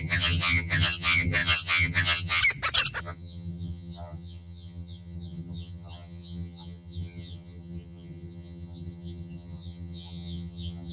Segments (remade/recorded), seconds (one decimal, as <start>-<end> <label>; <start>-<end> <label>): 0.0-2.4 remade; 2.4-3.0 recorded; 3.0-10.9 remade